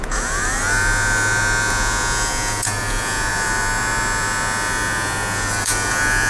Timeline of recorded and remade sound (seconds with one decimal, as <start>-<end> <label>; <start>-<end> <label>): 0.0-6.3 remade